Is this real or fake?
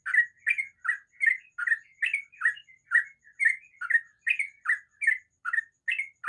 real